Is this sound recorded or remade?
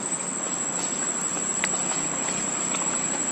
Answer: recorded